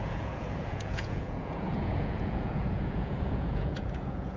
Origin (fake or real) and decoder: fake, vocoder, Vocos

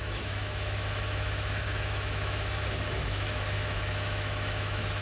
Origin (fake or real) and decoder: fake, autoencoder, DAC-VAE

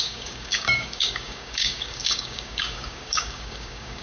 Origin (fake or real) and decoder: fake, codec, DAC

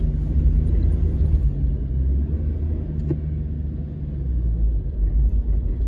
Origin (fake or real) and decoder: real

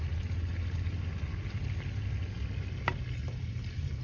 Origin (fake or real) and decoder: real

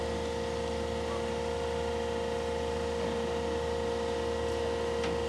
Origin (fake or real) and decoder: real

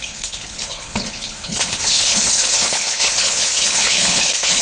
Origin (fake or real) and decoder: fake, codec, HILCodec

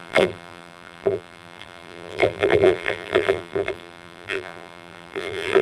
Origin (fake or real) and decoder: fake, vocoder, BigVGAN v2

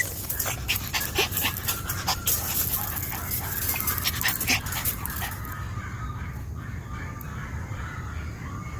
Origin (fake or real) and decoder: real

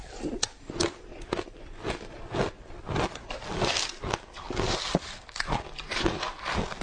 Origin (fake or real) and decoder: real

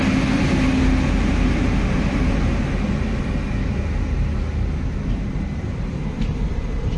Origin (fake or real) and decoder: real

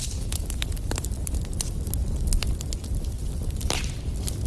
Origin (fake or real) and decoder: real